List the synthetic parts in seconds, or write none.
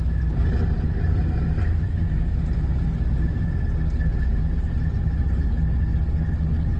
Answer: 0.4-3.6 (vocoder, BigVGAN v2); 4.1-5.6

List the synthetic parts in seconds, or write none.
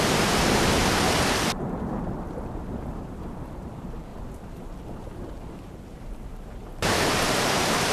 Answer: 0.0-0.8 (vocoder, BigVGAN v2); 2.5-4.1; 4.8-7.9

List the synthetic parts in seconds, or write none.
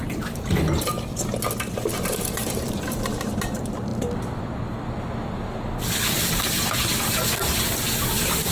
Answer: 0.0-1.1 (vocoder, BigVGAN v2); 1.7-3.9; 8.1-8.5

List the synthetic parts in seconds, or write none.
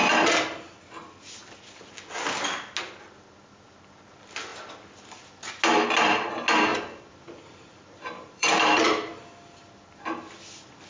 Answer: 0.0-0.8 (vocoder, BigVGAN v2); 6.7-9.7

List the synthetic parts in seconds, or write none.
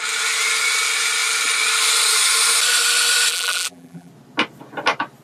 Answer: 3.3-4.1 (vocoder, BigVGAN v2)